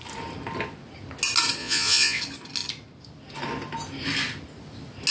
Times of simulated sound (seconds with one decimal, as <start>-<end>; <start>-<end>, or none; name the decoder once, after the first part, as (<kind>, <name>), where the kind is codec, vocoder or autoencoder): 1.6-2.2 (vocoder, Vocos)

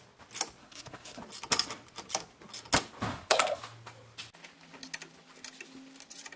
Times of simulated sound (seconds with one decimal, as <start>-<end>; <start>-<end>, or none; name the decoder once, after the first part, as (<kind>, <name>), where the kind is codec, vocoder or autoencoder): 0.6-1.2 (codec, SNAC); 3.1-3.6

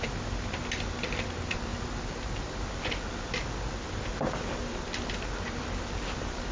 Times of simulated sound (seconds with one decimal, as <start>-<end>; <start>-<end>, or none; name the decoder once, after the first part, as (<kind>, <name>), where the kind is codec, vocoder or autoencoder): none

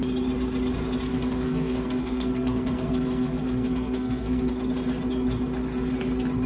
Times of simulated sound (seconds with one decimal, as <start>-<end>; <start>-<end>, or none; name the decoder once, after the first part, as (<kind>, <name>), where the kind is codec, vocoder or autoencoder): 1.1-4.5 (codec, SNAC)

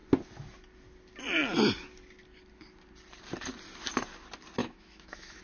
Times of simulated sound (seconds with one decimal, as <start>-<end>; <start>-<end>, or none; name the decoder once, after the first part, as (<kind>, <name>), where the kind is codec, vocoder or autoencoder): 4.6-5.4 (autoencoder, DAC-VAE)